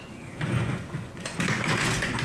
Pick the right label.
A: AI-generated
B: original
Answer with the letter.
A